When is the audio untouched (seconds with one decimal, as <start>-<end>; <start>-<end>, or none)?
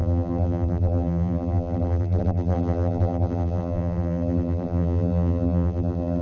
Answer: none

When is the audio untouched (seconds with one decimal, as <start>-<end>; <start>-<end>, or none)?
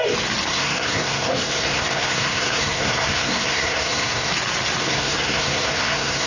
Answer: 0.0-0.5; 4.3-4.8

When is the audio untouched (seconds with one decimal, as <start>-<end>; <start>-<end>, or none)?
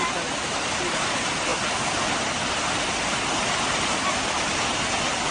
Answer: 0.0-5.3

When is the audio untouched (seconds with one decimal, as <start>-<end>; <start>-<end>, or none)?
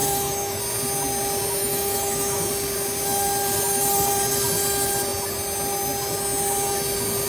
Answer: 0.6-1.6; 2.5-7.3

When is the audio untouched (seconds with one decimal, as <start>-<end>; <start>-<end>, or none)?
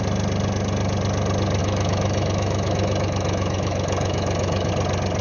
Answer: 0.0-1.6; 4.7-5.2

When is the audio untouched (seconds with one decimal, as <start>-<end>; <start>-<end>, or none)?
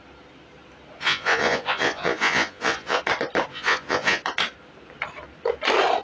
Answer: 0.0-1.0; 3.0-3.5; 4.2-6.0